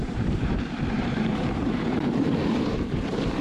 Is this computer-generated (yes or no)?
yes